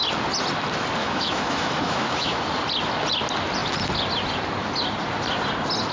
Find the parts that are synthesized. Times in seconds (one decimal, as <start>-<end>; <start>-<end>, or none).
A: 1.0-2.4